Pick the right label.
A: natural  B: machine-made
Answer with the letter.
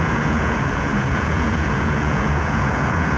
B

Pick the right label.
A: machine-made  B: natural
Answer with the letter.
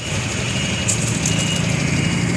B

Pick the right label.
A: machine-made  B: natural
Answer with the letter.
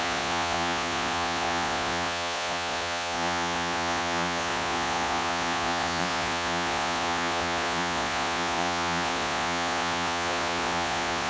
A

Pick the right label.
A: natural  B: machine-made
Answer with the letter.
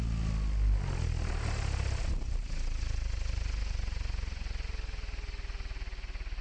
A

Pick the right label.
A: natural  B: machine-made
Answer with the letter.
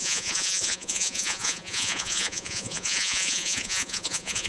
B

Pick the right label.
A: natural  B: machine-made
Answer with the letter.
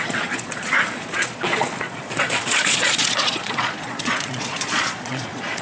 B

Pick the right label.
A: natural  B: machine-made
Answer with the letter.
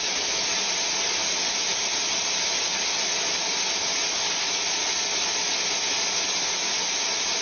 A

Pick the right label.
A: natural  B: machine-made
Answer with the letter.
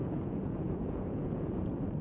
B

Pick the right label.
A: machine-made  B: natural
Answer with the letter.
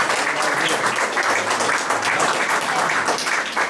B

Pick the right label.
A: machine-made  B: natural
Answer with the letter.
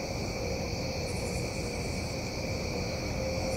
B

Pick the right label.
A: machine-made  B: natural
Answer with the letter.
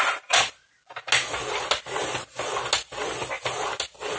B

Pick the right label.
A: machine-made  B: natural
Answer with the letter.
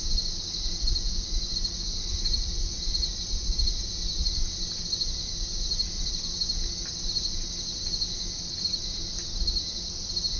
B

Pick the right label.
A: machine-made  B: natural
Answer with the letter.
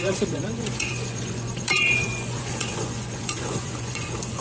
A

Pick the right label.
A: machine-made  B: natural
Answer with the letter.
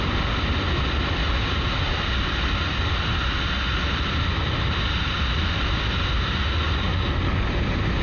B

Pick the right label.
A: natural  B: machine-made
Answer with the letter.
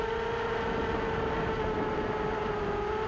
A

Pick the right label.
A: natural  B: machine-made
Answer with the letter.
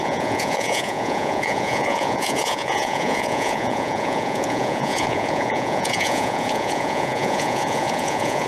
B